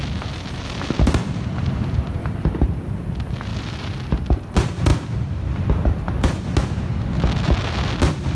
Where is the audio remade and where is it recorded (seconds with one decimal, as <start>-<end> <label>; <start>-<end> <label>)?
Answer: 0.0-2.2 recorded; 2.2-3.1 remade; 3.1-3.5 recorded; 3.5-4.0 remade; 4.0-4.9 recorded; 4.9-5.7 remade; 5.7-8.3 recorded